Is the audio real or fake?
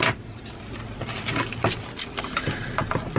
real